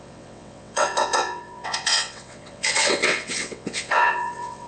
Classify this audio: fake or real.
fake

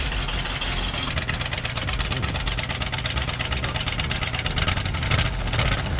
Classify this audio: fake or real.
real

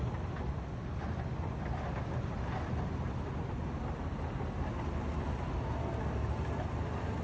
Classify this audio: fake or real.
real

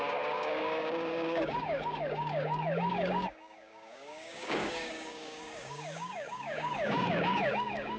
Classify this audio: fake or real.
fake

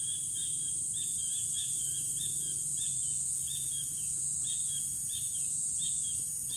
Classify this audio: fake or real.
fake